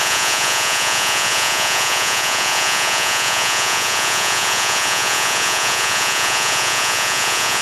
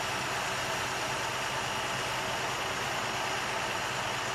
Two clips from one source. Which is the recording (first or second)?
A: second